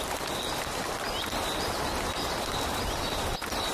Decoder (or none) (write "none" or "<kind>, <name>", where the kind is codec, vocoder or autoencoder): none